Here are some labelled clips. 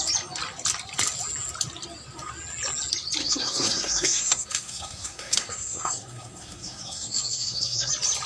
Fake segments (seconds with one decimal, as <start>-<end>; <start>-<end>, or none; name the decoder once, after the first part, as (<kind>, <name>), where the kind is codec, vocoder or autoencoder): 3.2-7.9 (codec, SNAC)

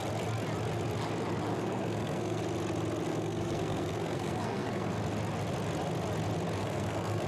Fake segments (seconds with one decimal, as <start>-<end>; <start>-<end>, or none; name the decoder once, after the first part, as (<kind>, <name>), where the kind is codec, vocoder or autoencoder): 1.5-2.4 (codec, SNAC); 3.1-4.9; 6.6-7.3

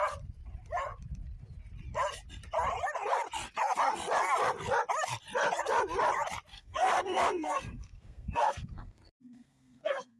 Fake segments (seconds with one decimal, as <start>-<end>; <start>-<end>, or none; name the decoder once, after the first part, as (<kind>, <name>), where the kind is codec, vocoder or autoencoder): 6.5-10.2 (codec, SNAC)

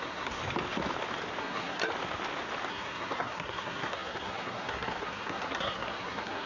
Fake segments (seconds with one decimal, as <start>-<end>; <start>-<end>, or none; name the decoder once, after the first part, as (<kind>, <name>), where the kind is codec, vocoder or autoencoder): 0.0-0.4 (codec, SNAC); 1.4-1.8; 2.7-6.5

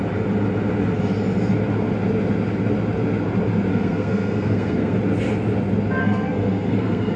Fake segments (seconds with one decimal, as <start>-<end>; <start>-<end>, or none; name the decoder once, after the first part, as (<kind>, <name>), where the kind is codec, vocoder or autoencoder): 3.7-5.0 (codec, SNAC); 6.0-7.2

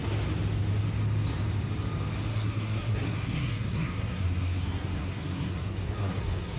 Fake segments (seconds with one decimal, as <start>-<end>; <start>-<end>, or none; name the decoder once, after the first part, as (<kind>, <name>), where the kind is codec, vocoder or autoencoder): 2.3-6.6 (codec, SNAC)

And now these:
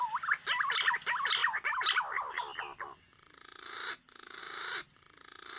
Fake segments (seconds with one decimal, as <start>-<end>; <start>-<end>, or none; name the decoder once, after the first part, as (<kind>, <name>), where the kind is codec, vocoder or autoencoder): none